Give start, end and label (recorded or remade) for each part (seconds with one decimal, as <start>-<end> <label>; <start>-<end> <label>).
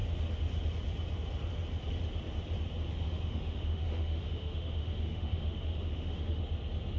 0.0-2.9 recorded; 2.9-6.4 remade; 6.4-7.0 recorded